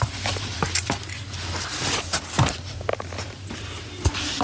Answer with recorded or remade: recorded